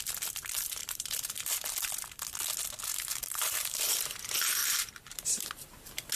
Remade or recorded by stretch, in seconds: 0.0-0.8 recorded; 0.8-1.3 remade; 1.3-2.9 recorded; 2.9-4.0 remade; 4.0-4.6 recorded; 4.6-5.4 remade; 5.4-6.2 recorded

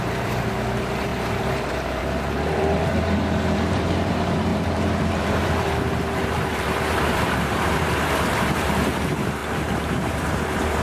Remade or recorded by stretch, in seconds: 0.0-10.8 remade

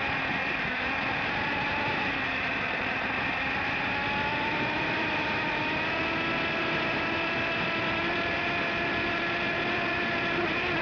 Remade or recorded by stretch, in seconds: 0.0-0.4 recorded; 0.4-1.5 remade; 1.5-4.3 recorded; 4.3-5.6 remade; 5.6-6.6 recorded; 6.6-10.8 remade

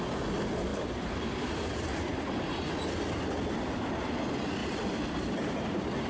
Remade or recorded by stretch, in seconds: 0.0-0.7 recorded; 0.7-1.6 remade; 1.6-4.6 recorded; 4.6-6.1 remade

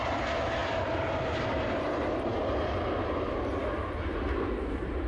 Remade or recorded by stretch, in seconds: 0.0-0.6 recorded; 0.6-1.8 remade; 1.8-5.1 recorded

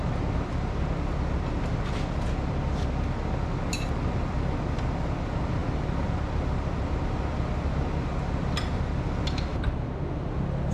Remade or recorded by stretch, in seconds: 0.0-10.7 recorded